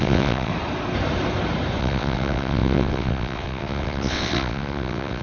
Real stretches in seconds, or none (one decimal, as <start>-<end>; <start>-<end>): 0.5-1.8